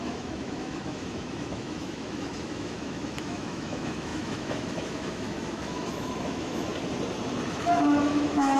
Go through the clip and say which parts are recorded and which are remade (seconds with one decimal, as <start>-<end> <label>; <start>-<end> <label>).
0.0-6.7 remade; 6.7-7.5 recorded; 7.5-8.6 remade